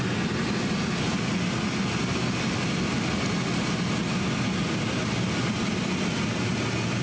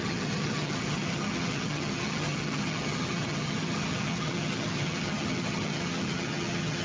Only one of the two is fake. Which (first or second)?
second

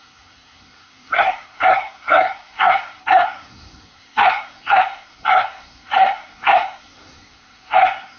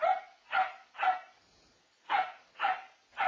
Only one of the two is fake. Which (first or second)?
first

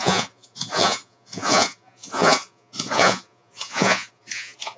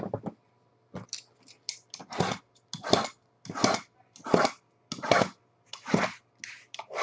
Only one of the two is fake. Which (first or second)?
first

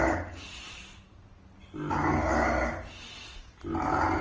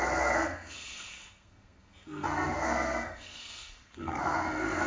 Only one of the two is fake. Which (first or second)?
second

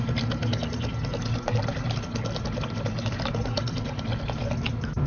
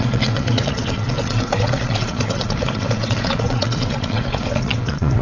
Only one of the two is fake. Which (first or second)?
second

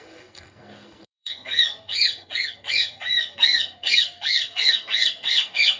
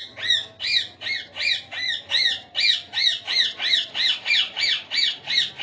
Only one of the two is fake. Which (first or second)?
first